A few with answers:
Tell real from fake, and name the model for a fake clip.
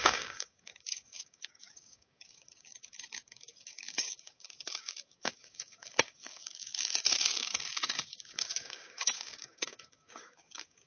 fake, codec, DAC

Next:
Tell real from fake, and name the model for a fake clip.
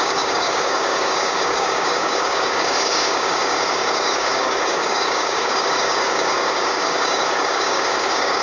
fake, codec, DAC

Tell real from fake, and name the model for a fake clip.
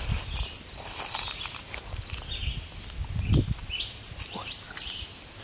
real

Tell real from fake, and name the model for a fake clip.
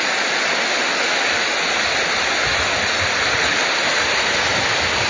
real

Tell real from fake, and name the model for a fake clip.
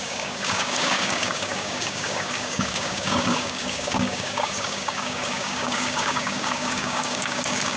fake, codec, DAC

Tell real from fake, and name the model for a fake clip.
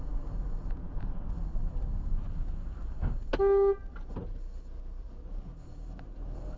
real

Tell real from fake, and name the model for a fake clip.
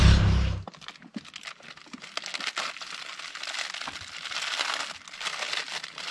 real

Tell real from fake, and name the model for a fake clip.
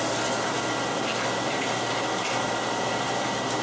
real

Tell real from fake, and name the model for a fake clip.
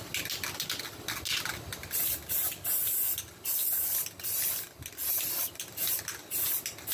real